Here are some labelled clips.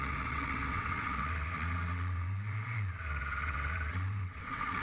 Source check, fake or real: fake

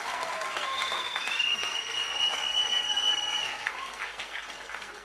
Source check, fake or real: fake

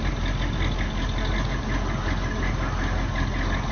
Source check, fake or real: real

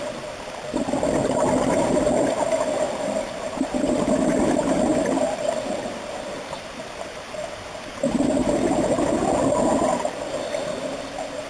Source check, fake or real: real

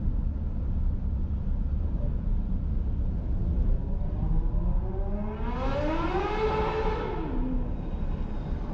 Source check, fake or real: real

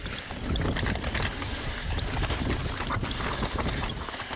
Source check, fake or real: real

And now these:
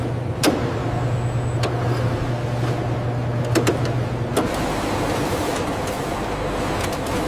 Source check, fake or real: real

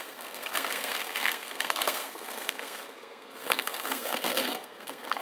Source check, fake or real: fake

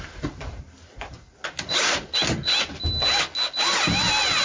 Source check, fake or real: real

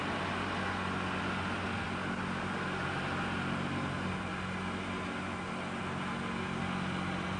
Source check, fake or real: real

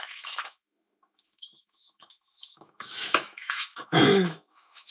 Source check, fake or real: fake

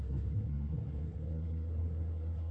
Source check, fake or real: fake